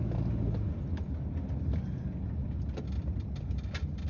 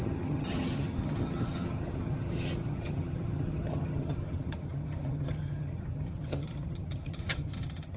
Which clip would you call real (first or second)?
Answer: first